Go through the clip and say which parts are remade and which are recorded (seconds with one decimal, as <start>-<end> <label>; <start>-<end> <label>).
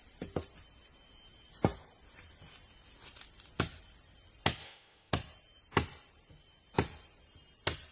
0.0-4.6 recorded; 4.6-5.1 remade; 5.1-7.9 recorded